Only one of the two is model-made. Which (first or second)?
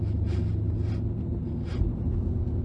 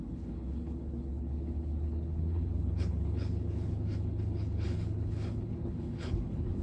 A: second